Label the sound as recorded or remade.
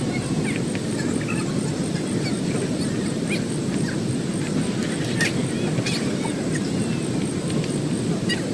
recorded